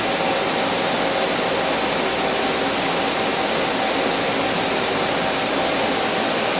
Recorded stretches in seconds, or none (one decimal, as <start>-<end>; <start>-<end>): 0.0-6.6